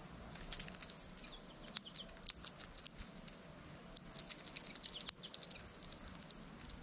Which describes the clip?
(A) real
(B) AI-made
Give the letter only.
A